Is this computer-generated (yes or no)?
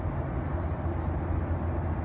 no